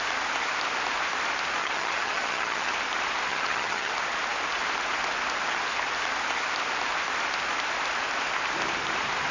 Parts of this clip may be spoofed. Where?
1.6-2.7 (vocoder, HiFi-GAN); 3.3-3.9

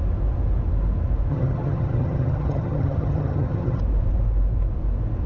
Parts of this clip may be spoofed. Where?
1.3-3.8 (vocoder, HiFi-GAN)

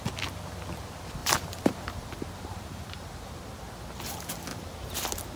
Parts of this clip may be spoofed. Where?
1.2-3.3 (vocoder, BigVGAN v2); 4.5-5.4

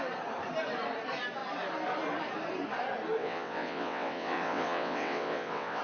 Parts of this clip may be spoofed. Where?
3.2-5.8 (vocoder, WaveNeXt)

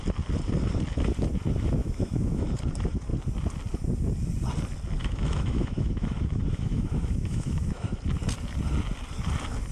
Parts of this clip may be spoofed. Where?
1.8-2.5 (autoencoder, DAC-VAE); 5.0-7.9

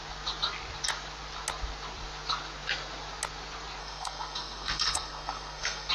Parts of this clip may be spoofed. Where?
3.8-5.9 (codec, SNAC)